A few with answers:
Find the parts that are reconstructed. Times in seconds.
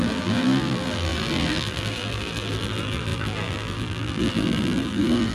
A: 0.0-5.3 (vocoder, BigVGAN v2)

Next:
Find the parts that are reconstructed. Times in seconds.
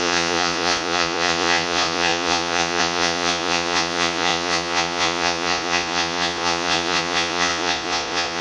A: 0.0-8.4 (vocoder, Vocos)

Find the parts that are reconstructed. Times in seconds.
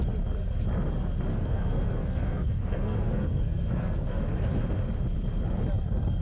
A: 1.3-4.2 (codec, SNAC)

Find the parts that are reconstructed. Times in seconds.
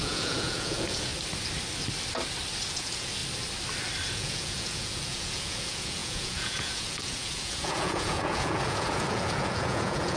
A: 0.0-1.1 (vocoder, Vocos); 2.7-3.2; 4.1-10.2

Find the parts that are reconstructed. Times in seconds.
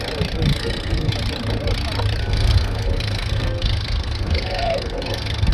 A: 0.5-1.1 (codec, SNAC); 2.2-5.5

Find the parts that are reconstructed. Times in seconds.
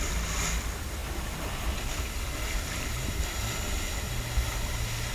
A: none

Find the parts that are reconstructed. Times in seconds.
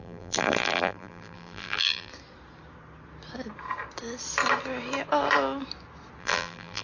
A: 0.0-2.1 (vocoder, BigVGAN v2); 6.2-6.8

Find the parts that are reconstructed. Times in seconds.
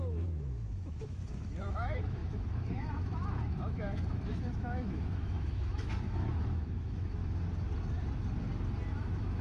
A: 0.0-7.2 (autoencoder, DAC-VAE); 8.9-9.4